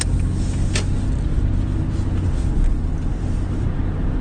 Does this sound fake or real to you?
real